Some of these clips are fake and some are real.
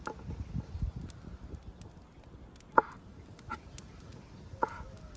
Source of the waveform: real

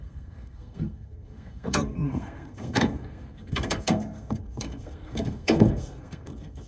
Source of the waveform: fake